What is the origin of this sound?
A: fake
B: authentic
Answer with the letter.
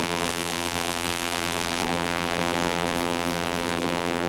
A